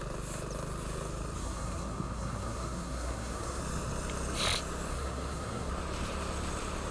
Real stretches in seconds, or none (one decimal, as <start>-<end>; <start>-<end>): 0.0-1.4; 3.6-4.9; 5.7-6.9